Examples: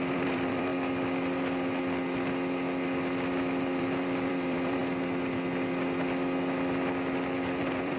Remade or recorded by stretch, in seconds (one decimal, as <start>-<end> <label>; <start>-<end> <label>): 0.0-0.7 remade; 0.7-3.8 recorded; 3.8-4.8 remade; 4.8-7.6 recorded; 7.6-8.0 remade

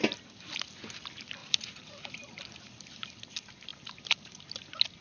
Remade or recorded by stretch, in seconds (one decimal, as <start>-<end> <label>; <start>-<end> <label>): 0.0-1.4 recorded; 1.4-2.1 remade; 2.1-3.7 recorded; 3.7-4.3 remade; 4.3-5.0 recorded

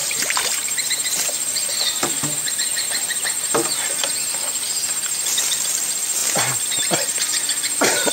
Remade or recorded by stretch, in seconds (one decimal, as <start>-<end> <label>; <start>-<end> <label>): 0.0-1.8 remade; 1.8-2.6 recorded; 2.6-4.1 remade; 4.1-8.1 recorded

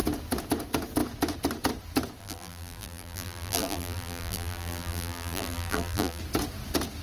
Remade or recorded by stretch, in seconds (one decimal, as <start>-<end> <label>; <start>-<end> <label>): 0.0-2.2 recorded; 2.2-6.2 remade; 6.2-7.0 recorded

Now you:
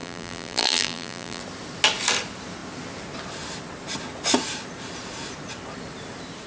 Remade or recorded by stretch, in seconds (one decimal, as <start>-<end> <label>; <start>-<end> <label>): 0.0-1.4 remade; 1.4-6.5 recorded

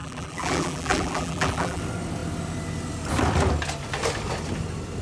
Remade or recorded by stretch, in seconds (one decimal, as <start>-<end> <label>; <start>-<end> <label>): 0.0-1.8 remade; 1.8-5.0 recorded

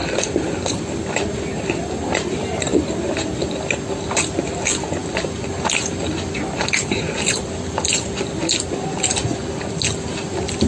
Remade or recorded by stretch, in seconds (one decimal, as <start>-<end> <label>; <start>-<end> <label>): 0.0-0.8 remade; 0.8-5.0 recorded; 5.0-8.1 remade; 8.1-10.7 recorded

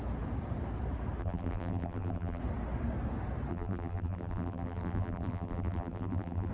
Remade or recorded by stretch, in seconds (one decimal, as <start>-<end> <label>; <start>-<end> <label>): 0.0-1.2 recorded; 1.2-2.4 remade; 2.4-3.5 recorded; 3.5-6.5 remade